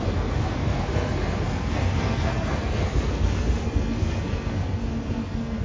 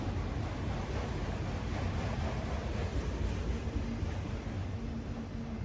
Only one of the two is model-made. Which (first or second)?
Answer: first